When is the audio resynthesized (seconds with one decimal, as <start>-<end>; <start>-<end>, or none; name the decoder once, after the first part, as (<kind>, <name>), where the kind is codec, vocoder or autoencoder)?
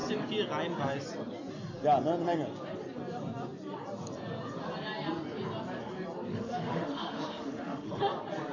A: 6.3-8.0 (autoencoder, DAC-VAE)